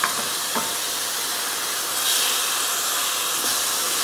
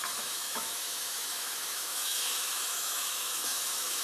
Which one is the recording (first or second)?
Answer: first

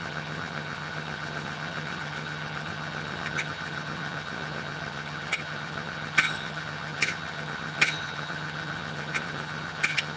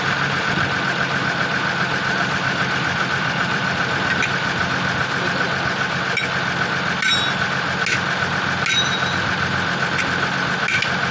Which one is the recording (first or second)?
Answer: second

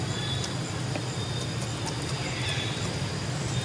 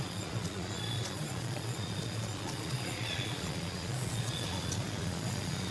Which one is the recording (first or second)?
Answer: first